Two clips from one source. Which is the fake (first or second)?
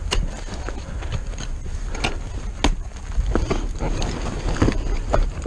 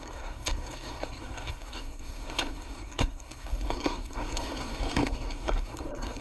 second